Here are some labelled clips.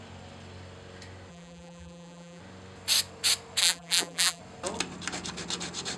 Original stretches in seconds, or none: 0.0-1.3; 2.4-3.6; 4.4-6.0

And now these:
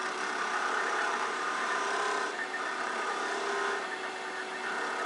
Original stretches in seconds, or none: 3.1-5.1

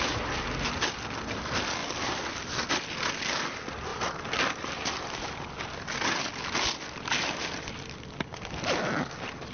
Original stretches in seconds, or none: 0.0-1.8; 3.0-9.5

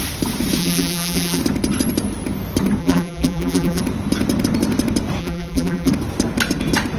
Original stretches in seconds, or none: 0.0-0.6; 1.4-2.8; 3.8-5.2; 5.9-7.0

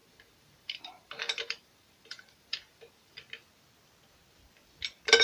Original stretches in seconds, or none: 3.1-5.2

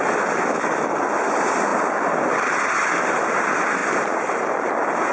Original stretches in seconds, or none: 0.0-5.1